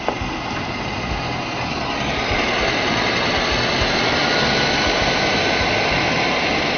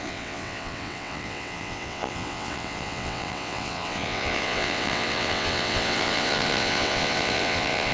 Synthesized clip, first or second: second